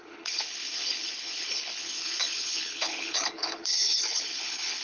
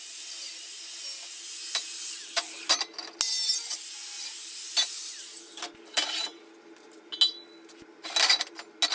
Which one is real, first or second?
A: second